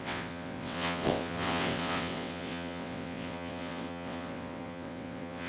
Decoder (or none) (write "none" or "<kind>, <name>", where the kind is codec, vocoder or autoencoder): vocoder, WaveNeXt